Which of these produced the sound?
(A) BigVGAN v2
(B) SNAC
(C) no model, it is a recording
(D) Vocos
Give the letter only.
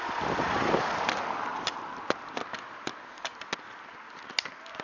C